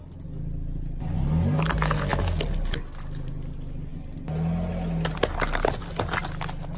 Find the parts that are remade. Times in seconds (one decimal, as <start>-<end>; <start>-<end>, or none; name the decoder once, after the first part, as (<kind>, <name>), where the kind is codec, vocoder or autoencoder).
none